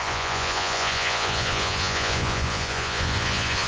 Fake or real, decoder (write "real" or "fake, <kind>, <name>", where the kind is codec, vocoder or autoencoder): fake, vocoder, Vocos